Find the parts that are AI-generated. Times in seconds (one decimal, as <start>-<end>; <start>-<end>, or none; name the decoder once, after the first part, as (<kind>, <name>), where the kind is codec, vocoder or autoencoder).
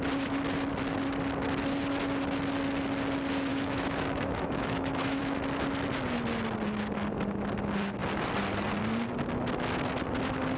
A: 3.5-5.2 (autoencoder, DAC-VAE)